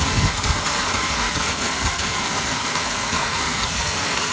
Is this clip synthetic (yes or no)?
yes